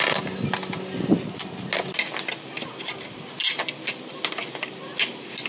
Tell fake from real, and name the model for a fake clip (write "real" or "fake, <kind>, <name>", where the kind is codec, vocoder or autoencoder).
real